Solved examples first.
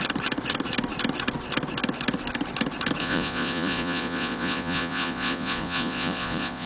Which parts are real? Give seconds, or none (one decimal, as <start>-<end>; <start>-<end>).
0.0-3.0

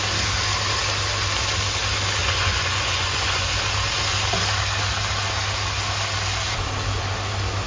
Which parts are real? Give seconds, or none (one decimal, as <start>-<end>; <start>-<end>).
0.0-2.2; 3.5-7.7

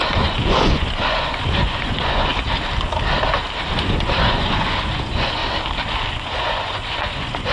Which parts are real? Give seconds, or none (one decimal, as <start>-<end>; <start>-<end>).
2.3-3.7; 5.4-6.1

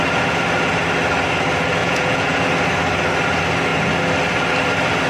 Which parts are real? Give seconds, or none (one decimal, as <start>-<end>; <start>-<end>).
0.0-1.8; 2.4-5.1